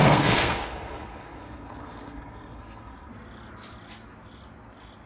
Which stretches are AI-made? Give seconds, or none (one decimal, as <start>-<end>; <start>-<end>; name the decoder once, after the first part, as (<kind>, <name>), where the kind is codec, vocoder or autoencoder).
0.0-3.1 (codec, SNAC)